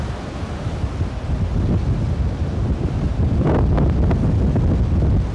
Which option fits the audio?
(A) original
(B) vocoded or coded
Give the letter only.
A